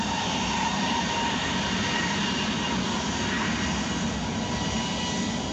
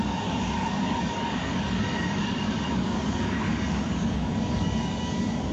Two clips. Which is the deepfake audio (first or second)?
second